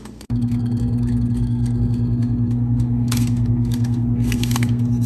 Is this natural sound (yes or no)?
no